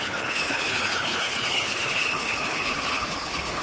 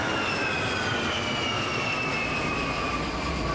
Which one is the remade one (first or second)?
first